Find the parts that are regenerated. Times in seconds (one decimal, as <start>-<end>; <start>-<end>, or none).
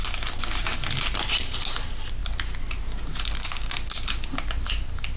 none